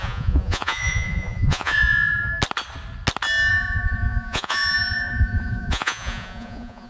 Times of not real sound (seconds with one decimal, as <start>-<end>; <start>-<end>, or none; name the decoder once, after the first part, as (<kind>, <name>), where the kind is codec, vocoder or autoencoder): 0.0-2.3 (vocoder, Vocos); 3.5-6.9